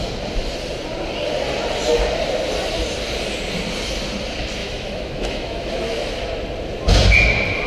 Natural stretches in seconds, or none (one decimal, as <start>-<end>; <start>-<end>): 0.0-4.6; 5.7-7.7